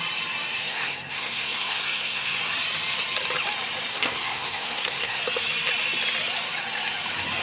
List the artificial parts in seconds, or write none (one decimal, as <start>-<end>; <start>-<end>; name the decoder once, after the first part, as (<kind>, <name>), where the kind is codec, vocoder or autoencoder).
0.6-2.4 (codec, SNAC); 3.9-5.2